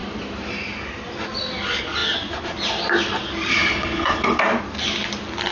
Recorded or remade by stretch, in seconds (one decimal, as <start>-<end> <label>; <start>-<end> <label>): 0.0-3.5 recorded; 3.5-4.4 remade; 4.4-5.5 recorded